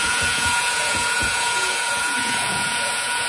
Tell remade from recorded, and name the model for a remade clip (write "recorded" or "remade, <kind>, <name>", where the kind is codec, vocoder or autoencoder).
remade, vocoder, Vocos